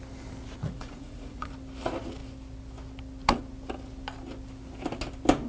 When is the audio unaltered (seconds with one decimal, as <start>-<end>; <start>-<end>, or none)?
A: 0.0-0.6; 1.5-5.5